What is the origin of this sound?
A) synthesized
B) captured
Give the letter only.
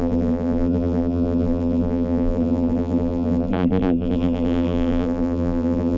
A